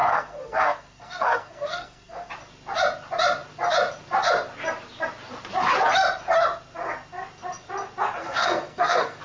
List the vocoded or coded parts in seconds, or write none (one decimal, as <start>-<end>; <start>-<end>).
0.0-2.3; 8.2-9.2